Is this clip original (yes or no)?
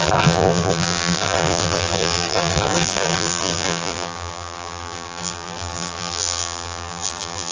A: no